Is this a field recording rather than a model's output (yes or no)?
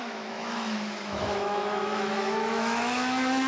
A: no